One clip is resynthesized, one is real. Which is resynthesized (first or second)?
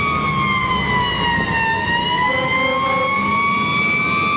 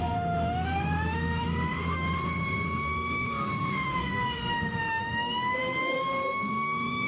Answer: second